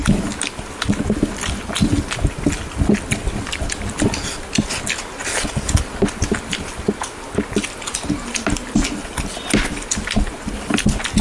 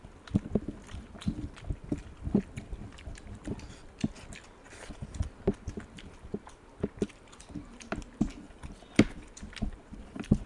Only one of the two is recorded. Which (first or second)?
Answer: first